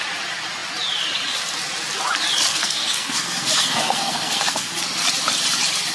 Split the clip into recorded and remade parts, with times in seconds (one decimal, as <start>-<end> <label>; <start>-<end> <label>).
0.0-2.5 recorded; 2.5-4.7 remade; 4.7-5.9 recorded